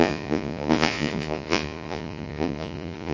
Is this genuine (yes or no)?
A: no